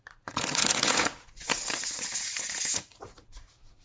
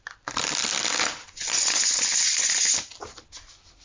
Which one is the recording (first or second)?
second